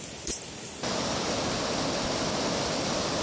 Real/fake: real